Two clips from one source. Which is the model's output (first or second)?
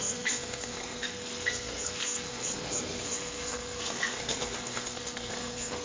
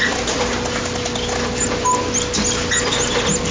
first